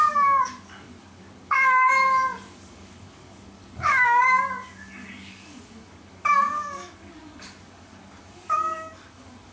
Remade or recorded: remade